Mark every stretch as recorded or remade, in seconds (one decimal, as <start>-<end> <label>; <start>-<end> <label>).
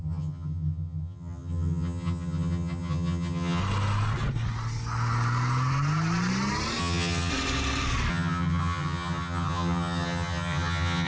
0.0-3.6 remade; 3.6-6.8 recorded; 6.8-7.3 remade; 7.3-8.1 recorded; 8.1-11.1 remade